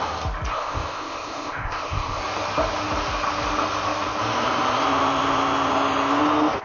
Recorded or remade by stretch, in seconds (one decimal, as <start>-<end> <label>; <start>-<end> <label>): 0.0-0.5 recorded; 0.5-2.2 remade; 2.2-6.6 recorded